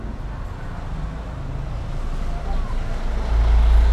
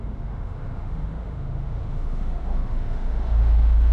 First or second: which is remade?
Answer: second